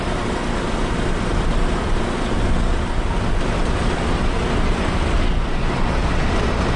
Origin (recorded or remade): recorded